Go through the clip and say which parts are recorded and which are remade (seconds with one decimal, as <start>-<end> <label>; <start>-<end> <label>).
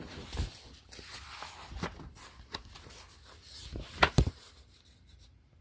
0.0-3.7 recorded; 3.7-5.6 remade